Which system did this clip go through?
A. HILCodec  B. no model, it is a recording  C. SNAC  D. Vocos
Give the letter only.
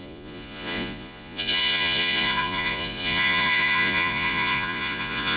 D